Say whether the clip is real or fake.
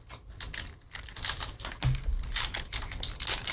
real